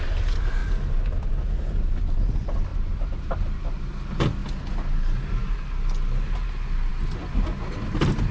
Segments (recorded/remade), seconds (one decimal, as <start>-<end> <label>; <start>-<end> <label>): 0.0-8.3 recorded